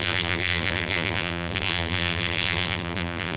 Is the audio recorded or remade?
remade